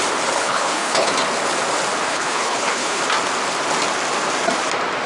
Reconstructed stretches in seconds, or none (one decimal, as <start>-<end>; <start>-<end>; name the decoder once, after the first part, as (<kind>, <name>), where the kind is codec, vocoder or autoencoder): 0.4-1.1 (codec, HILCodec); 2.1-3.0